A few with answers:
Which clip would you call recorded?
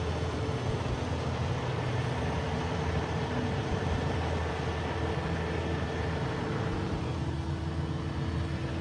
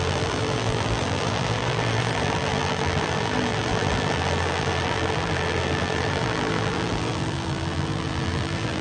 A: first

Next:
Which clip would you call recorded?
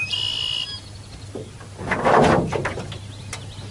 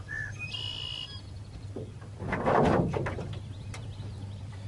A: first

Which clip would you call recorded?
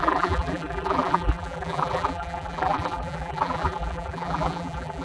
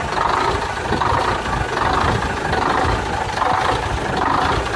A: second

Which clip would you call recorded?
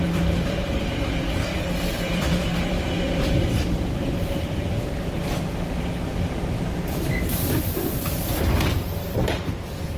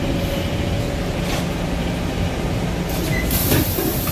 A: second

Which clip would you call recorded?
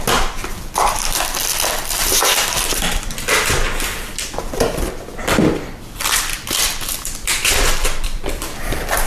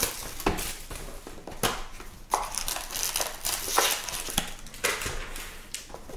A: second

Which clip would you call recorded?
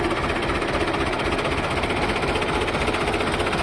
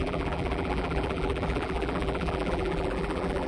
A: first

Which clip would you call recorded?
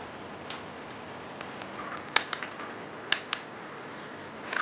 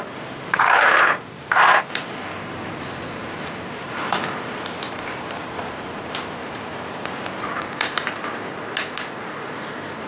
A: first